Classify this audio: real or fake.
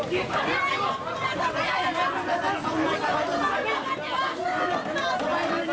real